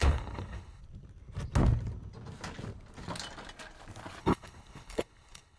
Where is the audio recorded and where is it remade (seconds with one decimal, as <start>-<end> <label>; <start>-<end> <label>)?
0.0-0.8 remade; 0.8-4.2 recorded; 4.2-5.6 remade